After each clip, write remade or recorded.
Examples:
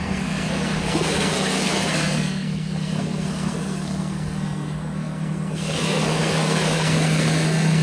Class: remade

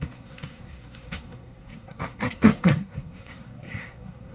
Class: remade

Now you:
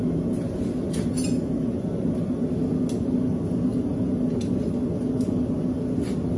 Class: recorded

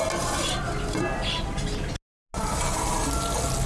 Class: recorded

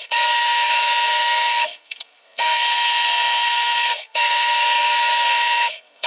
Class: remade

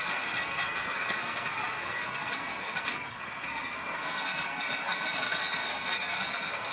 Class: remade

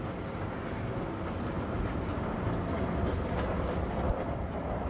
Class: recorded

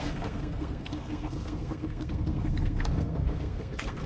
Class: remade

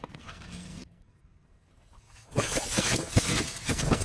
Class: remade